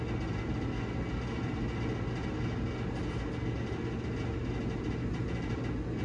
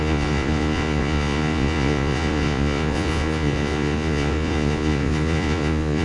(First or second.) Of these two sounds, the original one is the first